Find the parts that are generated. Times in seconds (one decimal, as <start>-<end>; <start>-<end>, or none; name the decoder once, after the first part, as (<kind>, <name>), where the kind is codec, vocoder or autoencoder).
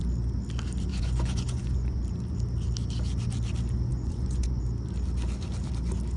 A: 0.9-2.0 (vocoder, Vocos); 3.9-4.6